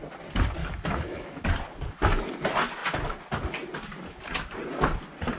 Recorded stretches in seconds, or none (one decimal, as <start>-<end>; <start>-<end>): 0.0-0.6; 1.4-5.4